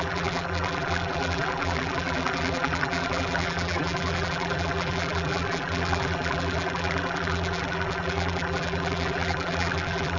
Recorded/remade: remade